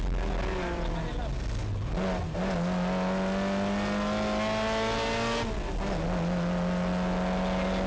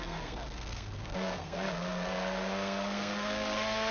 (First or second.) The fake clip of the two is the second